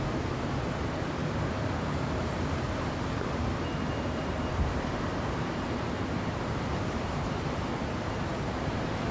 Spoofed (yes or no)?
yes